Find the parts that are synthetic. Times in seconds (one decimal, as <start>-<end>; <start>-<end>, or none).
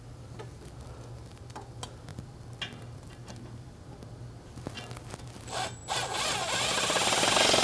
none